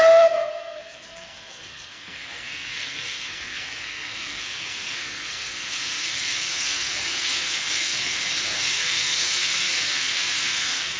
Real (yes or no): no